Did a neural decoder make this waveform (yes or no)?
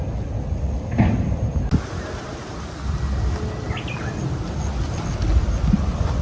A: no